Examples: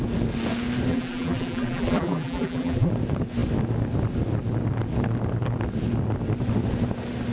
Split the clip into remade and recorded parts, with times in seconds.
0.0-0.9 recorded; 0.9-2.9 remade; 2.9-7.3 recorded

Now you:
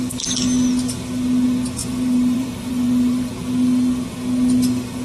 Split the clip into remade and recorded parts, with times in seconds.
0.0-1.8 recorded; 1.8-3.3 remade; 3.3-5.0 recorded

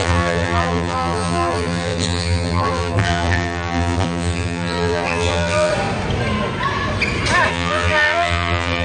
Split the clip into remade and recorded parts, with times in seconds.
0.0-5.7 remade; 5.7-7.5 recorded; 7.5-8.8 remade

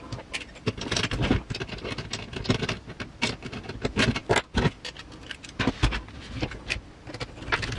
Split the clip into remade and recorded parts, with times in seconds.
0.0-7.8 recorded

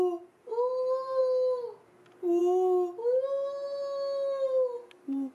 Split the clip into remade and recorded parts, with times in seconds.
0.0-5.3 recorded

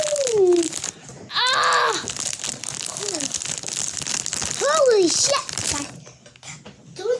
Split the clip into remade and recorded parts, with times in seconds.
0.0-7.2 recorded

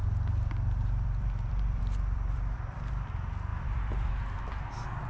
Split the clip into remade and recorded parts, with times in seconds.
0.0-2.9 remade; 2.9-3.5 recorded; 3.5-4.1 remade; 4.1-5.1 recorded